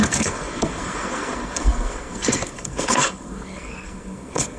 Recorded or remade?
remade